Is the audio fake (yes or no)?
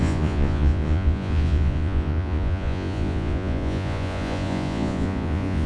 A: yes